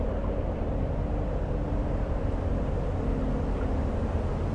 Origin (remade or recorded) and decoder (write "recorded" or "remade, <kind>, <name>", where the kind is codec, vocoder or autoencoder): recorded